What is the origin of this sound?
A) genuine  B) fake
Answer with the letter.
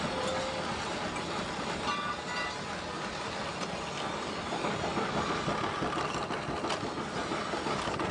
A